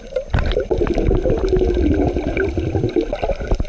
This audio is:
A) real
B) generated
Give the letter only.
A